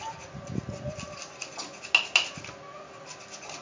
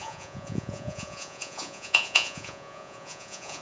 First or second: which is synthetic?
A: second